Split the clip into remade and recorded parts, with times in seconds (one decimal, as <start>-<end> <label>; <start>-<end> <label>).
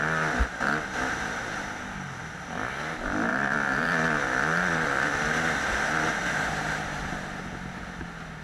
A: 0.0-3.3 recorded; 3.3-3.9 remade; 3.9-8.4 recorded